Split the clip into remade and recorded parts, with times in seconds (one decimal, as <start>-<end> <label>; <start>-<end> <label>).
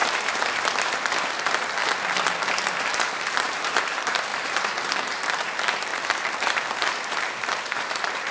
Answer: 0.0-1.8 remade; 1.8-2.8 recorded; 2.8-8.3 remade